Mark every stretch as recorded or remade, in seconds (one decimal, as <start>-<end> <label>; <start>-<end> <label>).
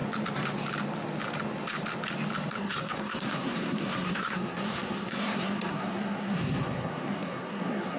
0.0-2.5 recorded; 2.5-8.0 remade